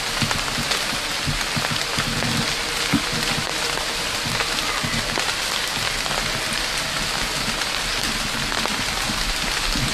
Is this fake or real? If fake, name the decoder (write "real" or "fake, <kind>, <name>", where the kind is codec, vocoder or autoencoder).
real